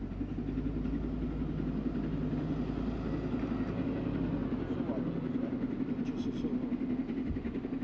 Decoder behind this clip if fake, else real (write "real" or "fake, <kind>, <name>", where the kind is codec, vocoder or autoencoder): real